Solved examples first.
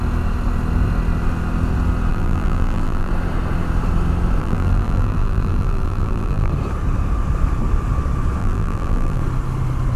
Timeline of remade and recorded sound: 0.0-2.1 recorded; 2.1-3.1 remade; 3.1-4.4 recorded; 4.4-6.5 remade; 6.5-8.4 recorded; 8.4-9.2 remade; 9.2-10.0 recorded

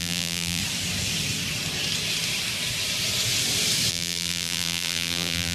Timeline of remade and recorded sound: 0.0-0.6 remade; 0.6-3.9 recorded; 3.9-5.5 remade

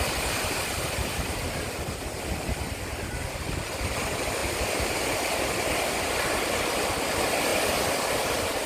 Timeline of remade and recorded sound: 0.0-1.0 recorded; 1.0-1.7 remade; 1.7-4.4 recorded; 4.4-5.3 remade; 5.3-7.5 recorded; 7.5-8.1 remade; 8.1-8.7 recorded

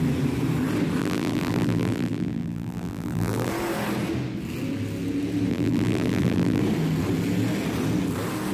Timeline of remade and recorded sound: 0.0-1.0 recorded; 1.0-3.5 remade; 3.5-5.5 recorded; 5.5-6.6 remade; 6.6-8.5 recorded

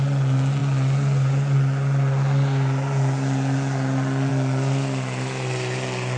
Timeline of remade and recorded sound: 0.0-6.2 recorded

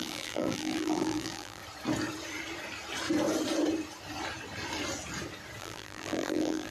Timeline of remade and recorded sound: 0.0-1.6 remade; 1.6-5.6 recorded; 5.6-6.7 remade

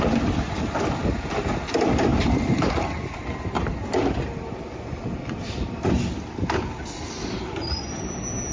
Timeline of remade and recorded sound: 0.0-2.1 recorded; 2.1-3.1 remade; 3.1-8.5 recorded